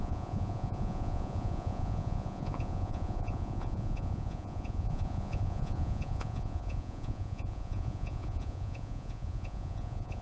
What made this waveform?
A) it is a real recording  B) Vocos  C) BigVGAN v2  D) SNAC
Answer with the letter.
B